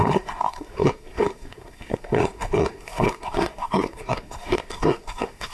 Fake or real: fake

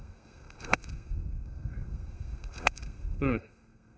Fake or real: fake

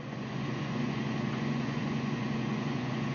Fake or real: fake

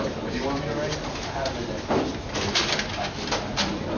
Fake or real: real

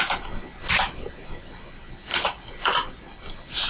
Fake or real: real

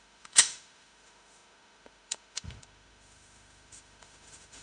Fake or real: fake